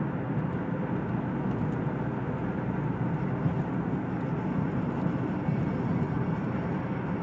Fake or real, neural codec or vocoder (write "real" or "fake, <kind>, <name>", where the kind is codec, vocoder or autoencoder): real